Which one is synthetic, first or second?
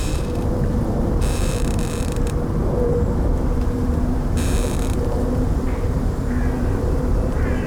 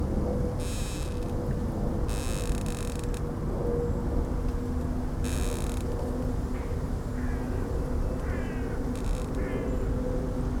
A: first